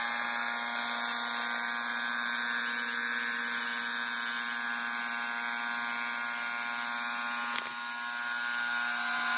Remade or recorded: recorded